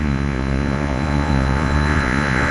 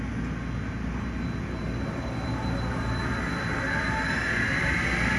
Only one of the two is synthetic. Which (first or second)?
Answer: first